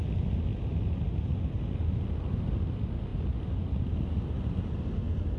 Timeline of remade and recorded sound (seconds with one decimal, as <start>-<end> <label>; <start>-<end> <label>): 0.0-5.4 recorded